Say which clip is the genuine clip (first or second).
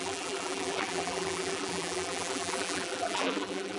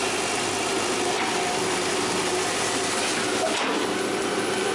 second